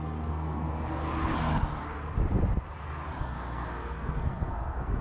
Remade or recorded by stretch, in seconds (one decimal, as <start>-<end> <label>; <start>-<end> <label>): 0.0-1.0 remade; 1.0-3.2 recorded; 3.2-5.0 remade